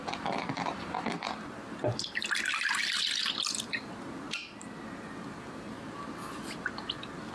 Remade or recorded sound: recorded